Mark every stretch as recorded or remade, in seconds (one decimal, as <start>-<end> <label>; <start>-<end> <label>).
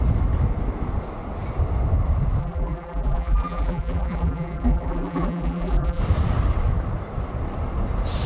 0.0-2.4 recorded; 2.4-6.0 remade; 6.0-8.3 recorded